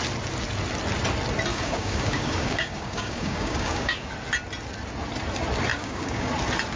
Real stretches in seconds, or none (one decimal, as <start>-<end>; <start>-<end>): 0.0-1.5; 4.1-5.7; 6.3-6.8